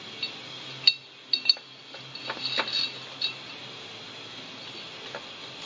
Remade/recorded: recorded